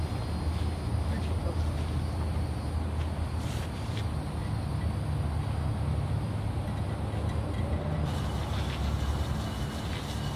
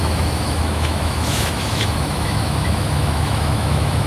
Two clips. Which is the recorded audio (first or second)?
first